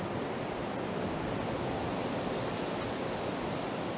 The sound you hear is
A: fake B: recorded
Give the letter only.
B